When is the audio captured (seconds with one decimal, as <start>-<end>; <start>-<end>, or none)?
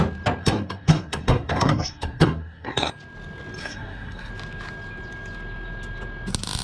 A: 0.0-0.4; 2.9-3.6; 4.3-6.6